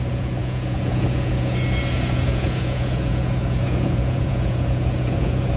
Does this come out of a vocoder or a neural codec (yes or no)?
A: yes